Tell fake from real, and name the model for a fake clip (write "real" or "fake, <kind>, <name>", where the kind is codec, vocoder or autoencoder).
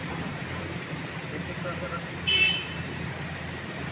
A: fake, vocoder, BigVGAN v2